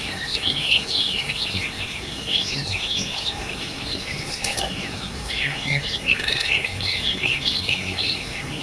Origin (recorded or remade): remade